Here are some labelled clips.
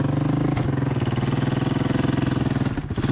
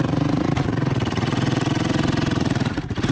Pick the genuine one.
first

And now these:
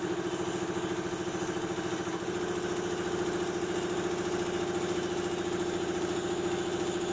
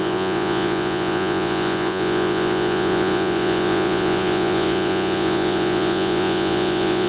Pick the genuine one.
first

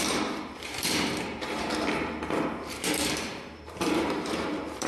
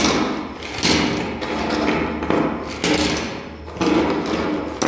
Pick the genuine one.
second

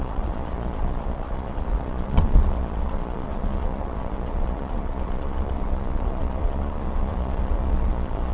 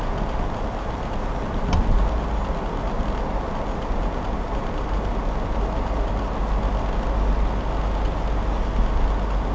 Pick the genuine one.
second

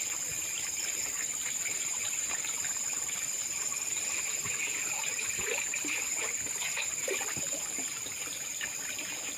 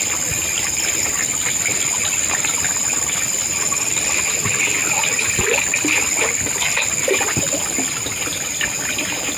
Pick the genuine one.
second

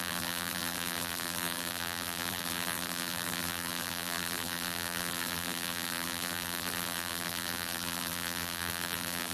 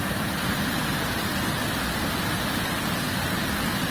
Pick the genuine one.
second